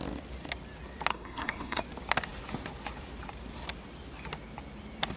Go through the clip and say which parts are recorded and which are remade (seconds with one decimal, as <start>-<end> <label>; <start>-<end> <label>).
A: 0.0-1.1 recorded; 1.1-1.8 remade; 1.8-5.2 recorded